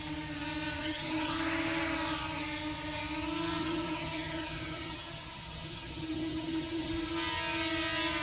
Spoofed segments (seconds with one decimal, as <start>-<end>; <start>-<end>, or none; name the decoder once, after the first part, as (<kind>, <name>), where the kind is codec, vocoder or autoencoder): 0.8-1.3 (vocoder, HiFi-GAN); 3.6-6.9